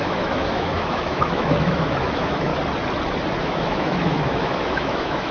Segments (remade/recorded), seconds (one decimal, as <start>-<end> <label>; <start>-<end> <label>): 0.0-2.5 remade; 2.5-3.4 recorded; 3.4-5.3 remade